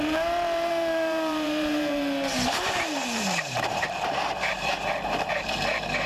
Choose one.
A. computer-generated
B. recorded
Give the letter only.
A